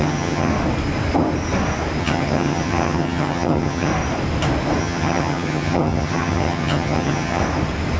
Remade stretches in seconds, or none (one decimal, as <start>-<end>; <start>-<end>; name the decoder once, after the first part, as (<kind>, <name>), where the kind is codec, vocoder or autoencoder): 0.0-0.5 (vocoder, HiFi-GAN); 2.0-3.9; 4.8-7.4